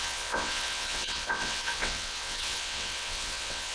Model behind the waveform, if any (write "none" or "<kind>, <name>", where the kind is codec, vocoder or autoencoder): vocoder, WaveNeXt